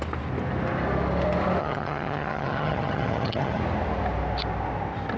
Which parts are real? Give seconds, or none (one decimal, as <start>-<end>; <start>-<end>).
0.0-1.6; 3.6-5.2